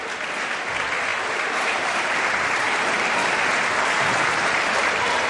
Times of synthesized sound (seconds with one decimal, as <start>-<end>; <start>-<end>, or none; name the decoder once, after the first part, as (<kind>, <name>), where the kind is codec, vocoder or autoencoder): 0.0-1.1 (vocoder, BigVGAN v2); 4.3-5.3